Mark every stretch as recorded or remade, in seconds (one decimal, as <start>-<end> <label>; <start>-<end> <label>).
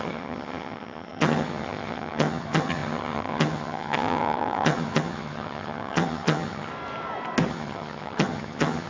0.0-6.7 remade; 6.7-7.5 recorded; 7.5-8.9 remade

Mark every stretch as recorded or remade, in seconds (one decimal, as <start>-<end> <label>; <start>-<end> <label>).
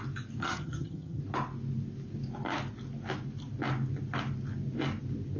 0.0-0.4 recorded; 0.4-1.2 remade; 1.2-5.4 recorded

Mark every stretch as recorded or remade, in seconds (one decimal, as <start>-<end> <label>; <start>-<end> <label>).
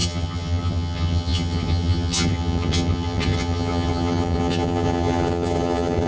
0.0-6.1 remade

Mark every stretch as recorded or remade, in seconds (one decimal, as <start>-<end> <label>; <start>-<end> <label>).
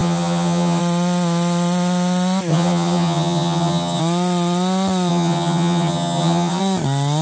0.0-0.8 remade; 0.8-2.5 recorded; 2.5-4.0 remade; 4.0-5.1 recorded; 5.1-6.6 remade; 6.6-7.2 recorded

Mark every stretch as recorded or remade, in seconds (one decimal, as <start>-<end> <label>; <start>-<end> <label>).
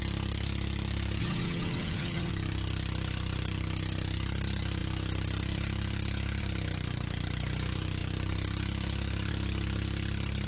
0.0-1.2 recorded; 1.2-2.3 remade; 2.3-10.5 recorded